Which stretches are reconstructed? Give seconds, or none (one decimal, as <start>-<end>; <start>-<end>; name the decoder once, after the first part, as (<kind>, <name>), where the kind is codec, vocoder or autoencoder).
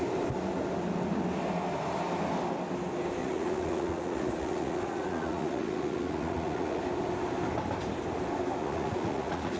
3.2-6.8 (vocoder, Vocos); 8.6-9.6